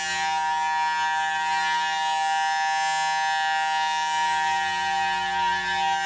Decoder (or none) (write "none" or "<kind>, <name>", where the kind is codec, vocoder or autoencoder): none